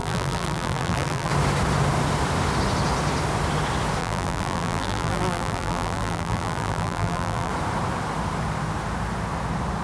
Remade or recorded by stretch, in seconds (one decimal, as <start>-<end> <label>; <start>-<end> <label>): 0.0-1.3 remade; 1.3-4.0 recorded; 4.0-7.5 remade; 7.5-9.8 recorded